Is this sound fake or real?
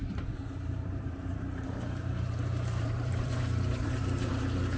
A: fake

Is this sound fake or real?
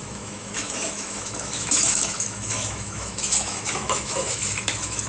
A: fake